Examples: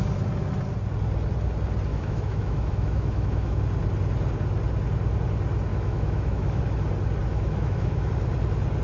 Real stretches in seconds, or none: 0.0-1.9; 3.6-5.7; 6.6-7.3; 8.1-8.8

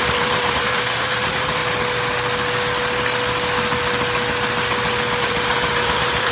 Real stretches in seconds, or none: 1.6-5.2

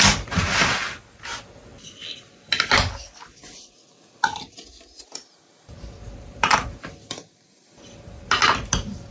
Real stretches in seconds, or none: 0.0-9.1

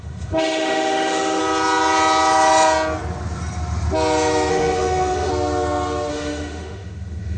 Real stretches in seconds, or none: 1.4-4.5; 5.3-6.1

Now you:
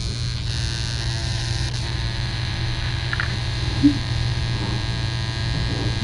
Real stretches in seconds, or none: 0.0-1.2; 4.4-6.0